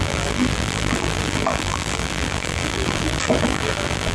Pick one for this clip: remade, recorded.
remade